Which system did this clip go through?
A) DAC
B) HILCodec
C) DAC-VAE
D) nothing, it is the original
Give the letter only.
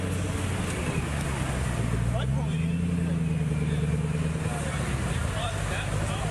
D